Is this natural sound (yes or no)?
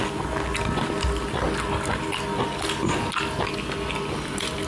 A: yes